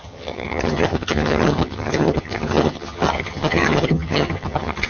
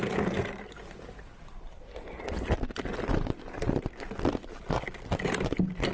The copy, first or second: first